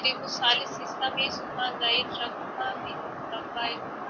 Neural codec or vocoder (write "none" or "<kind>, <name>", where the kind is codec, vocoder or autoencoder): none